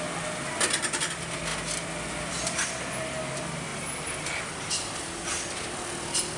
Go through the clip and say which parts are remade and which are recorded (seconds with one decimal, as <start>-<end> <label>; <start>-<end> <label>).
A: 0.0-6.4 recorded